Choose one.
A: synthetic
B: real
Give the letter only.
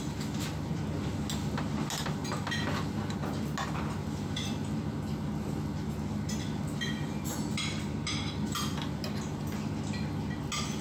B